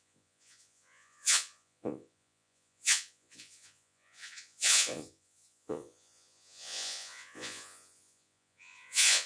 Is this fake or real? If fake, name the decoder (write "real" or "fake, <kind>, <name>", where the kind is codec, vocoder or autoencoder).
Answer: fake, vocoder, Vocos